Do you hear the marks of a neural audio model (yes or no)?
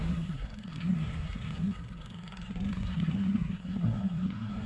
yes